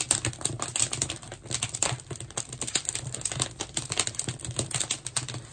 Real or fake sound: real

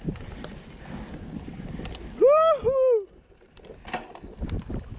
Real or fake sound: real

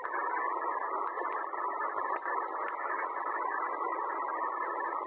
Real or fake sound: real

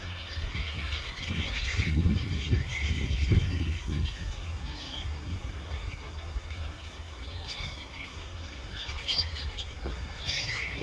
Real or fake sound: fake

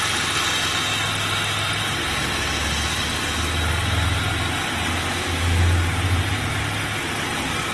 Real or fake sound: real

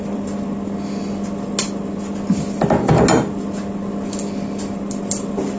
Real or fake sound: real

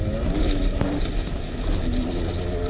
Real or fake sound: real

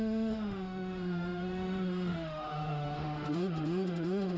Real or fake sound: fake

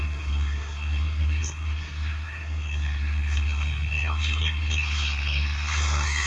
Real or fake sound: fake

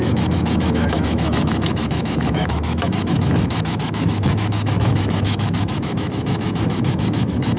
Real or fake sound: fake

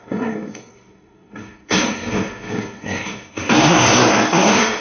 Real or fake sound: fake